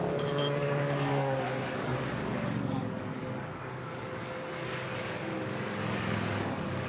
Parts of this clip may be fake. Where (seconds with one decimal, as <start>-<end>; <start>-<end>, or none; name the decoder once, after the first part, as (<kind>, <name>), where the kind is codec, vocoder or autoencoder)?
0.0-6.9 (codec, DAC)